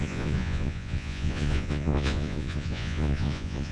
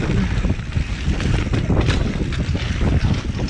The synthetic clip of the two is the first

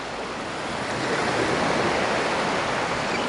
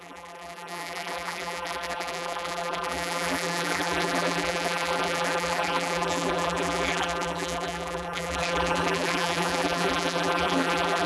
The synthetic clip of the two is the second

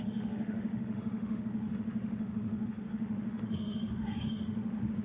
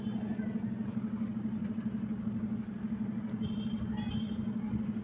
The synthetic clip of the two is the first